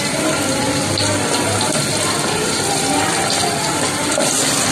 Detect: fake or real real